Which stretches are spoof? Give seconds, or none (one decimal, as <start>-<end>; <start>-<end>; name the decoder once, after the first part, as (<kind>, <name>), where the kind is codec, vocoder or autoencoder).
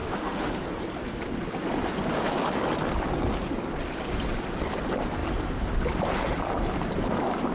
0.0-0.6 (autoencoder, DAC-VAE)